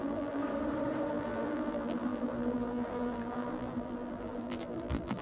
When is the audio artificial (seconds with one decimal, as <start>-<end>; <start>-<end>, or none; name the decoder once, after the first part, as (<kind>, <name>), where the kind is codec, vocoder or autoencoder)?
0.0-0.4 (vocoder, BigVGAN v2); 1.1-5.2